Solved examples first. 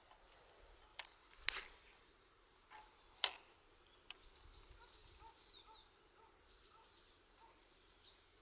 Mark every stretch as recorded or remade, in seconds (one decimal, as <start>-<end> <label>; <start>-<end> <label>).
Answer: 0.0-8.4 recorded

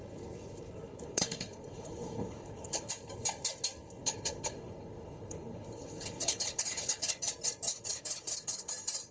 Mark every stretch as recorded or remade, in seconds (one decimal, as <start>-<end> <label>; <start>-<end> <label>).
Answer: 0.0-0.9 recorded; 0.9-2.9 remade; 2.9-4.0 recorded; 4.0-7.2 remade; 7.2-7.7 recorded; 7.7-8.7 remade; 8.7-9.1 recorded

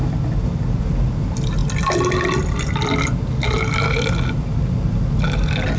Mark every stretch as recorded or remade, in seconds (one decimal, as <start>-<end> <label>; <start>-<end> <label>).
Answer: 0.0-5.8 recorded